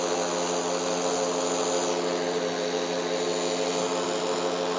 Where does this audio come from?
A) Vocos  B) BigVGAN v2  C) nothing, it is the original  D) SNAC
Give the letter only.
C